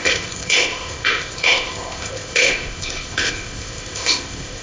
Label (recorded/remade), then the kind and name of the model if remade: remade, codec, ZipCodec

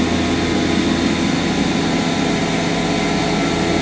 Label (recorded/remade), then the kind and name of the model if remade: recorded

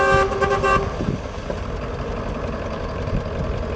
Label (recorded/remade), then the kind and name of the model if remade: recorded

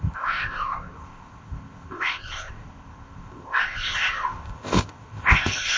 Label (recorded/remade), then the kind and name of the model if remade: remade, codec, ZipCodec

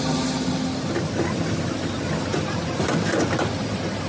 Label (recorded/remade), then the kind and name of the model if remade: recorded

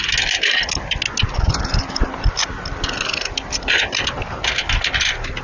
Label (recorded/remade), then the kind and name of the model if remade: recorded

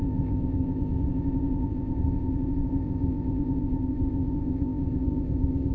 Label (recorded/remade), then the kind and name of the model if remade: remade, codec, ZipCodec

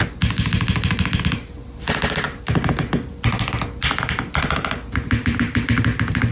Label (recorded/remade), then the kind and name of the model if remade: recorded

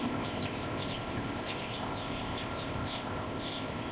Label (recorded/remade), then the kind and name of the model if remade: remade, codec, ZipCodec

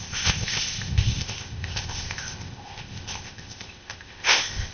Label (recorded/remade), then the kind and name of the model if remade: remade, codec, ZipCodec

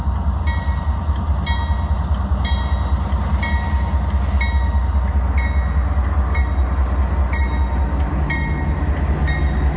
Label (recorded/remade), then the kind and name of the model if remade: recorded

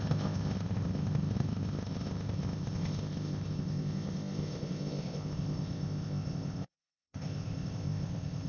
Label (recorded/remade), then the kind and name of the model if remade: remade, codec, ZipCodec